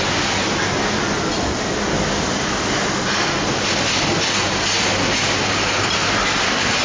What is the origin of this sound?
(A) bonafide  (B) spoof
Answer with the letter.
A